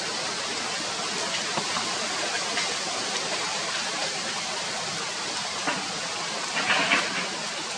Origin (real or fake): real